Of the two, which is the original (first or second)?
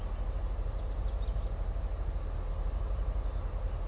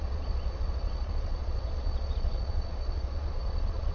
first